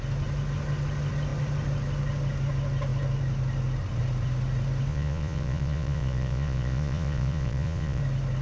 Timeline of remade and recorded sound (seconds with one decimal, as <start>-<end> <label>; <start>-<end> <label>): 0.0-4.9 recorded; 4.9-8.0 remade; 8.0-8.4 recorded